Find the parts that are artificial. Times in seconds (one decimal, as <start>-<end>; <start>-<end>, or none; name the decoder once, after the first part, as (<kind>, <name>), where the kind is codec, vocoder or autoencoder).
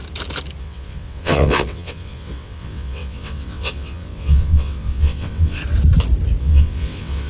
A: 0.6-5.6 (vocoder, WaveNeXt); 6.4-7.3